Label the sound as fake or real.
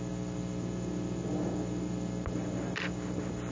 real